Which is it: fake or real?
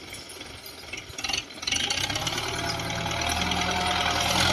real